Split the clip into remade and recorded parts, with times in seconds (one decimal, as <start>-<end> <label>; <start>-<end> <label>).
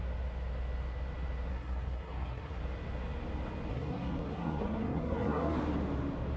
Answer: 0.0-1.5 recorded; 1.5-2.6 remade; 2.6-3.7 recorded; 3.7-5.6 remade; 5.6-6.4 recorded